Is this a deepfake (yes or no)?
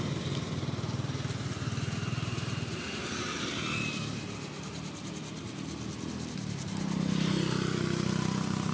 no